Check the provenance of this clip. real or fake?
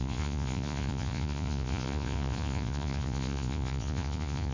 fake